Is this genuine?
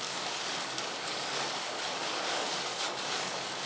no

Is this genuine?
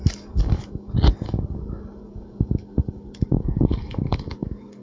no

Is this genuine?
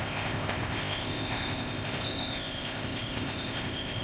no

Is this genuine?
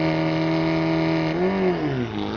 yes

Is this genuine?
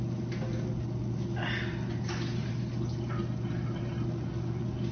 yes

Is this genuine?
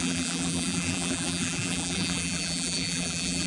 no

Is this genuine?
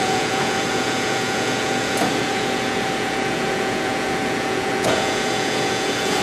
no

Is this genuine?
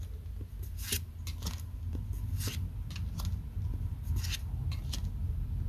yes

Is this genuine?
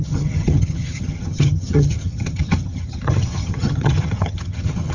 no